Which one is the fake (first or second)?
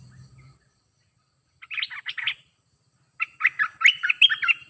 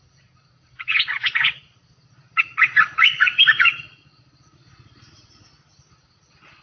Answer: second